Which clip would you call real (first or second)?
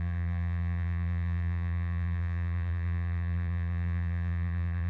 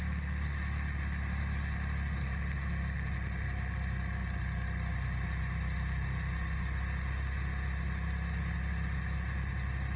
second